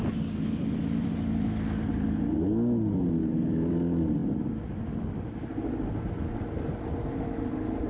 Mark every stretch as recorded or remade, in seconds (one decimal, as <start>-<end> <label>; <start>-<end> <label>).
0.0-3.2 recorded; 3.2-3.7 remade; 3.7-7.9 recorded